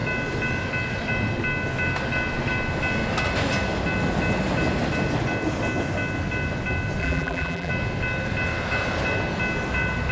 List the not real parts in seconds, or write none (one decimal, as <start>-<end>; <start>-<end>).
7.0-7.7